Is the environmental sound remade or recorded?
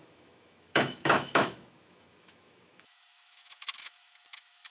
remade